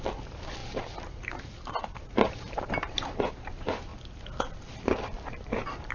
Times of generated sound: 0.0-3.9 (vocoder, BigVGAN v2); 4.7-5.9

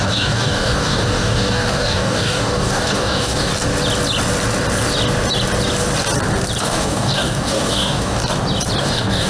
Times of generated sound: 0.0-3.5 (codec, DAC); 6.6-8.2; 8.8-9.3